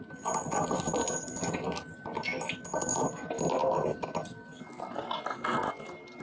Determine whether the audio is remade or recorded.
recorded